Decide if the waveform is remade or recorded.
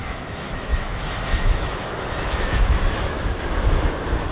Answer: remade